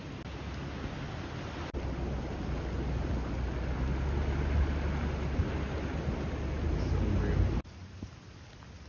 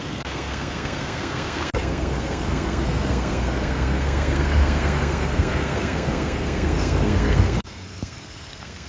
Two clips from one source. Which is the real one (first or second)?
first